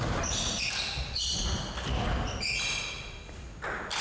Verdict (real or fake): real